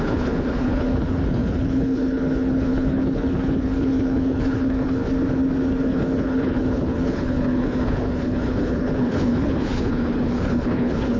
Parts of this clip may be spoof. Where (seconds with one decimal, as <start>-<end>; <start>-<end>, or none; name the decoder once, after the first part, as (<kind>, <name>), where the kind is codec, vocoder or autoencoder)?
0.0-5.0 (codec, HILCodec); 5.8-11.2